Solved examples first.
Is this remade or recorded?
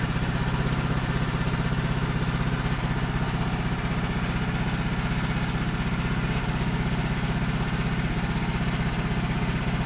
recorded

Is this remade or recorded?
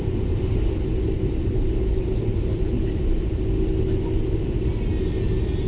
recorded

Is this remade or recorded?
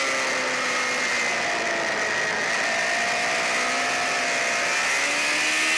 recorded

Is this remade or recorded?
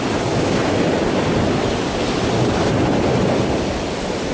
recorded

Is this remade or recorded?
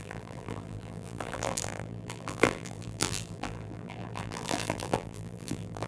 remade